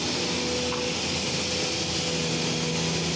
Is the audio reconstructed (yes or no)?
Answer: no